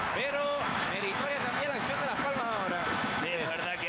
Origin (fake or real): fake